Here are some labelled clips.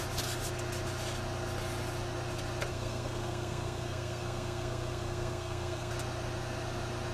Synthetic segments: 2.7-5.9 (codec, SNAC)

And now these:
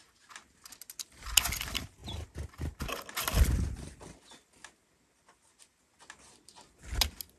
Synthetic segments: none

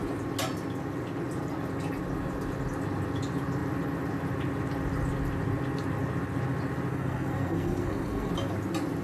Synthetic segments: 6.9-8.3 (codec, SNAC)

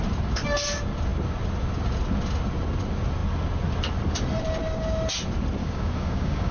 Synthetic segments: 5.6-6.5 (codec, DAC)